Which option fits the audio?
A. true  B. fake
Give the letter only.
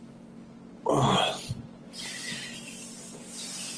A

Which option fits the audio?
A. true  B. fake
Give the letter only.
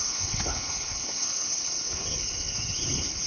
B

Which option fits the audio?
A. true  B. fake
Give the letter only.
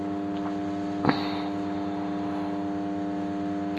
A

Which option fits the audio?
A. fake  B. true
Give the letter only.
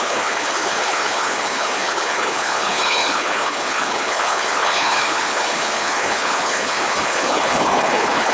A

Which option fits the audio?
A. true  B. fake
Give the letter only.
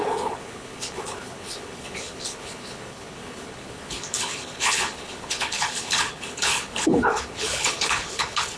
B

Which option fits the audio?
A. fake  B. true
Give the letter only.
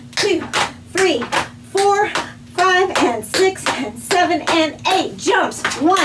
B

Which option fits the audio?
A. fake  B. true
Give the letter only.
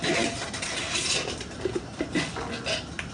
B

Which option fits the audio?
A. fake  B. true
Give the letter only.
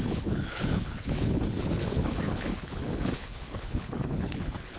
A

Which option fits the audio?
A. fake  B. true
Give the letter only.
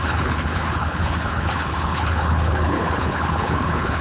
A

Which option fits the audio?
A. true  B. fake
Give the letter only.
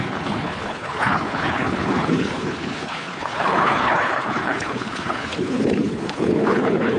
B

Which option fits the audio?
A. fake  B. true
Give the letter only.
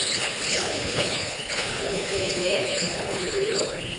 A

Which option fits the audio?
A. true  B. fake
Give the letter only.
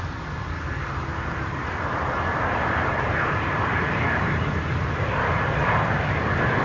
A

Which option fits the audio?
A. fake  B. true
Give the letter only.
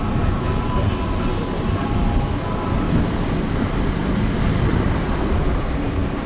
B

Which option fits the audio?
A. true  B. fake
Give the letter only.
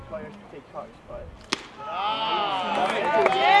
A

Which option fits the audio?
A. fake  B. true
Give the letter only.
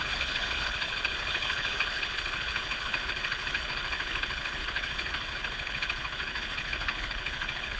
A